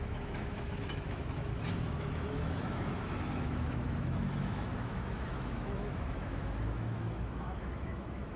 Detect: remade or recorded remade